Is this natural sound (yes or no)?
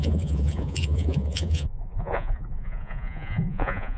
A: no